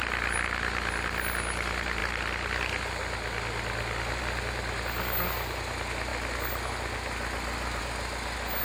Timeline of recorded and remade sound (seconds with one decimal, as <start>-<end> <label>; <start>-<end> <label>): 0.0-8.6 recorded